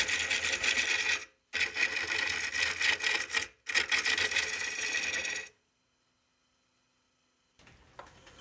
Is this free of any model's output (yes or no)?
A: yes